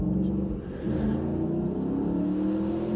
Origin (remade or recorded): recorded